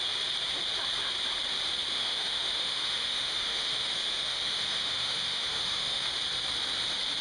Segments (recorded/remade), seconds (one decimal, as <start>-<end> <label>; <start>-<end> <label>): 0.0-1.9 recorded; 1.9-6.2 remade; 6.2-7.2 recorded